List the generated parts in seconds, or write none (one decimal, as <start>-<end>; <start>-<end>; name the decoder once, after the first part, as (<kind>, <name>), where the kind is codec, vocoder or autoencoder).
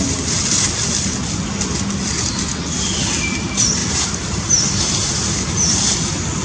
3.8-5.1 (vocoder, BigVGAN v2)